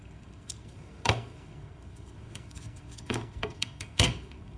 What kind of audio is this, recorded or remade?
remade